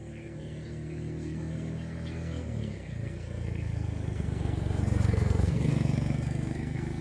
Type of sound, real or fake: fake